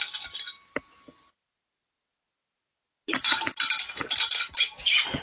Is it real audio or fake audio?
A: real